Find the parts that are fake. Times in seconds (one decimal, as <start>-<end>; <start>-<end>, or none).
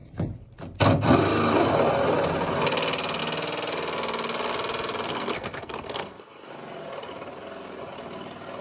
5.1-6.5